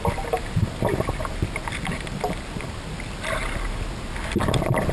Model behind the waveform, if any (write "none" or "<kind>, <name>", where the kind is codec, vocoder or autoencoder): none